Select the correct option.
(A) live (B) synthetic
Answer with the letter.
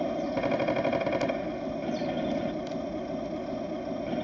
A